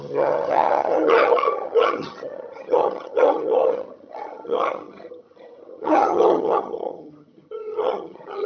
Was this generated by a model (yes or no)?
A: yes